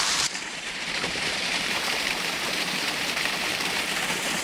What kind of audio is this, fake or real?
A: fake